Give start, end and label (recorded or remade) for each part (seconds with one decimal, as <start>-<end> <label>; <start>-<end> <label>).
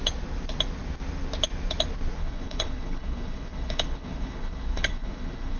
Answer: 0.0-2.2 recorded; 2.2-5.6 remade